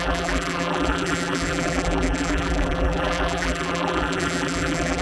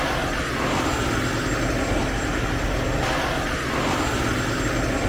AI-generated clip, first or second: first